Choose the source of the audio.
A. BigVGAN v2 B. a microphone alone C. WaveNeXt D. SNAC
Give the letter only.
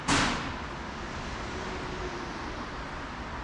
B